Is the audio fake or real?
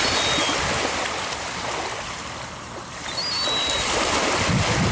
real